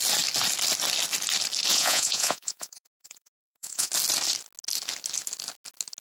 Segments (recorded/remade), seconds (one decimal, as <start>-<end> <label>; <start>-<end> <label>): 0.0-1.7 recorded; 1.7-3.9 remade; 3.9-6.0 recorded